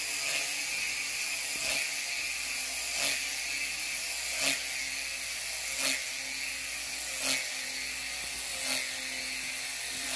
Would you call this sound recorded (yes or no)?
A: yes